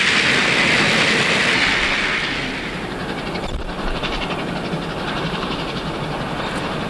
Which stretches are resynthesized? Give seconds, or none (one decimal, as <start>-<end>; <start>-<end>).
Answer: none